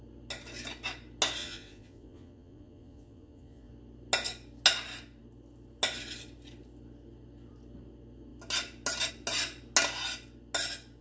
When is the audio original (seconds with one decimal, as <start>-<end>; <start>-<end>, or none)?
0.0-1.4; 3.7-11.0